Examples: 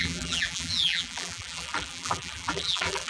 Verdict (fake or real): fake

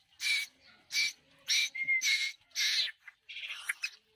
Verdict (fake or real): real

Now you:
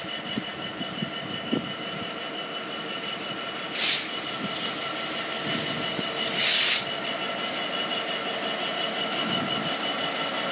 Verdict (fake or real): real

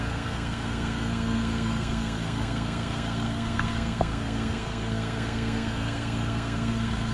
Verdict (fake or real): fake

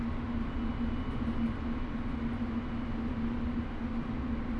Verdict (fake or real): real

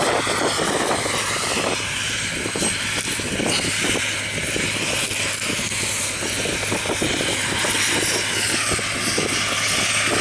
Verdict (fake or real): real